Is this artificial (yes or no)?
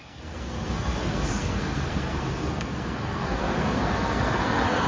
yes